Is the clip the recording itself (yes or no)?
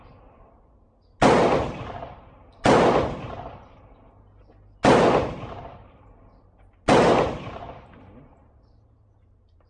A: yes